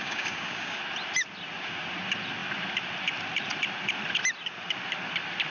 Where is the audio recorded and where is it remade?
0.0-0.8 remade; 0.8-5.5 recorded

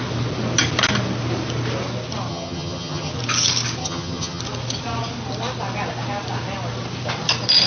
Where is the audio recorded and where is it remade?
0.0-2.3 recorded; 2.3-3.1 remade; 3.1-3.8 recorded; 3.8-4.4 remade; 4.4-7.7 recorded

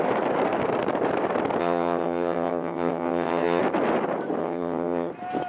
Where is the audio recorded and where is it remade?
0.0-1.6 recorded; 1.6-3.6 remade; 3.6-4.4 recorded; 4.4-5.1 remade; 5.1-5.5 recorded

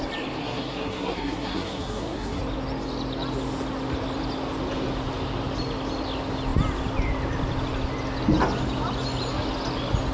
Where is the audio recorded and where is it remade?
0.0-0.4 recorded; 0.4-2.4 remade; 2.4-10.1 recorded

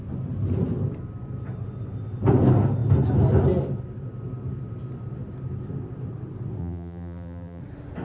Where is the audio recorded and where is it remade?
0.0-6.6 recorded; 6.6-7.6 remade; 7.6-8.0 recorded